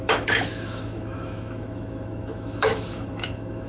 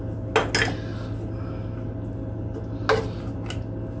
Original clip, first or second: second